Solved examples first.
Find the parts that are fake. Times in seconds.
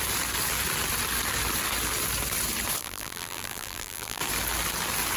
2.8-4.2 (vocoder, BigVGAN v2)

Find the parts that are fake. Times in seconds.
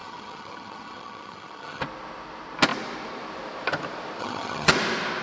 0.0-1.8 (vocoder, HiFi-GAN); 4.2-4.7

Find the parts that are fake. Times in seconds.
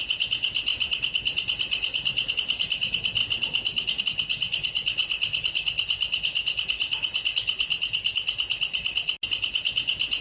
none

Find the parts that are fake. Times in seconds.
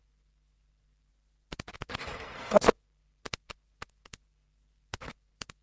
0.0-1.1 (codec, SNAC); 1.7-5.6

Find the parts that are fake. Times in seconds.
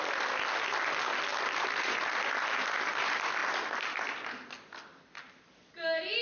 none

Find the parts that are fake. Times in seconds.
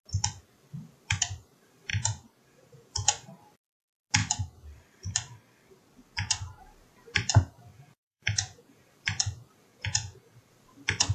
1.9-2.9 (vocoder, Vocos); 7.7-8.9; 9.7-10.5